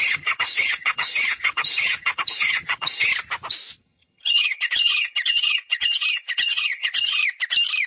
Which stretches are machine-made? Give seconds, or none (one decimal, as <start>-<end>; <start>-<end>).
0.0-3.1; 3.8-7.2